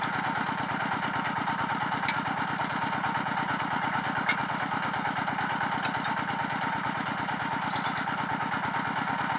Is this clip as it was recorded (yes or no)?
yes